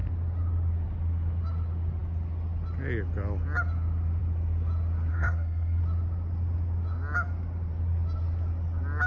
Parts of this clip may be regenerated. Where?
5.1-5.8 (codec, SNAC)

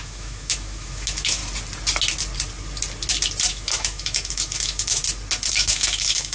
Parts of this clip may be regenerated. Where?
0.0-1.4 (autoencoder, DAC-VAE); 3.5-5.0; 5.5-6.3

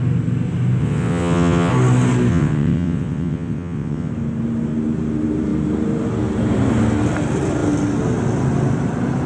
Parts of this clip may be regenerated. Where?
0.8-1.7 (vocoder, WaveNeXt); 2.3-4.1

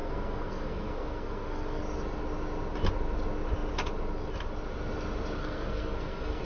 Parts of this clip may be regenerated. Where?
0.0-1.8 (codec, SNAC); 5.4-6.4

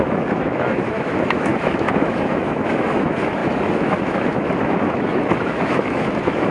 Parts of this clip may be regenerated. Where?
0.0-6.5 (autoencoder, DAC-VAE)

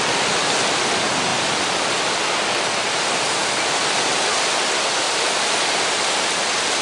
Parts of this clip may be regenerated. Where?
none

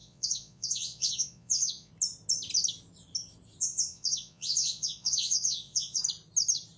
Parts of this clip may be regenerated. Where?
0.0-1.9 (vocoder, Vocos); 3.6-6.0